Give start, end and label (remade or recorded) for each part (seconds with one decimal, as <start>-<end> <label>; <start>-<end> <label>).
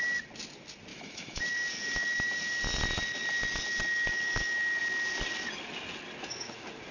0.0-0.9 recorded; 0.9-1.4 remade; 1.4-6.9 recorded